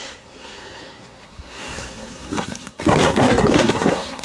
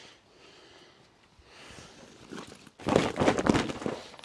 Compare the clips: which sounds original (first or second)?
second